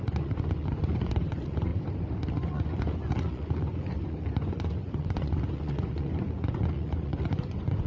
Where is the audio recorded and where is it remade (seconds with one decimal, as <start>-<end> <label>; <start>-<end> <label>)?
0.0-1.7 remade; 1.7-2.5 recorded; 2.5-7.9 remade